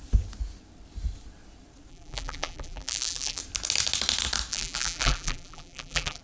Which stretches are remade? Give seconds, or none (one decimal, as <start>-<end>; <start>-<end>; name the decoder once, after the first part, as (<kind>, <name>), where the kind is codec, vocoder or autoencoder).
1.9-3.4 (vocoder, BigVGAN v2); 4.5-6.2

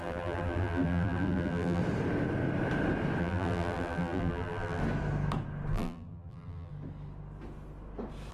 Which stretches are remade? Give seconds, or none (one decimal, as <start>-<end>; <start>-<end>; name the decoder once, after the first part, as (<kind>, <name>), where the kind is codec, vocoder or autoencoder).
0.0-1.8 (vocoder, BigVGAN v2); 3.2-4.8; 5.7-6.7

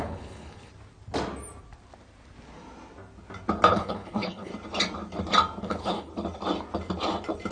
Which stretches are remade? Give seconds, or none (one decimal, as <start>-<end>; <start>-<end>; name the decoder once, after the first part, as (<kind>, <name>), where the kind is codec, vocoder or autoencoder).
0.0-0.7 (codec, HILCodec); 3.7-4.5; 5.6-6.1

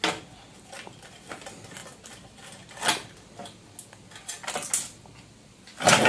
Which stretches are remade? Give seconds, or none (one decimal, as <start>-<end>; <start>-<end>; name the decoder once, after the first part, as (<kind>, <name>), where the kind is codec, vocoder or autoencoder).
none

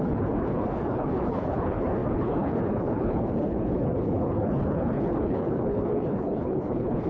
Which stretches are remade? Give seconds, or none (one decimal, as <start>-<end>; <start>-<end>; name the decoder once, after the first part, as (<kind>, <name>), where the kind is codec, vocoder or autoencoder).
0.0-7.1 (codec, HILCodec)

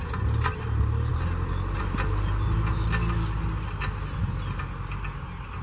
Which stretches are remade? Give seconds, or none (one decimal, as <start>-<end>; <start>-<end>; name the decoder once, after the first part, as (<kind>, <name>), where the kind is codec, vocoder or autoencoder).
none

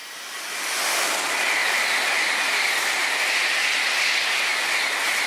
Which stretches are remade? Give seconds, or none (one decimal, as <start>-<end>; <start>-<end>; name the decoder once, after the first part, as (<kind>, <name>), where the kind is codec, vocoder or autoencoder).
0.0-0.5 (vocoder, BigVGAN v2)

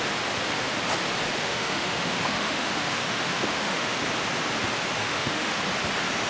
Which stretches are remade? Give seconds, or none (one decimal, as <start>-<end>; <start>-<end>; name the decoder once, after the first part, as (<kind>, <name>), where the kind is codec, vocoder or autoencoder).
1.4-4.0 (autoencoder, DAC-VAE); 5.0-5.6